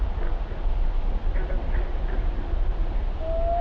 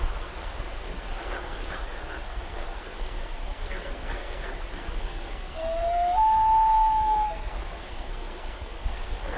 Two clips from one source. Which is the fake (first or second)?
second